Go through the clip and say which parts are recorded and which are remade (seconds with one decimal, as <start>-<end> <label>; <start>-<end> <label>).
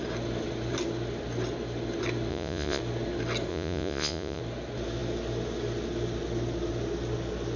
0.0-2.3 recorded; 2.3-2.8 remade; 2.8-3.5 recorded; 3.5-4.4 remade; 4.4-7.6 recorded